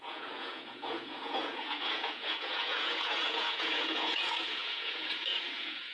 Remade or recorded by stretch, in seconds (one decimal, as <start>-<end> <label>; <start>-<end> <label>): 0.0-5.9 remade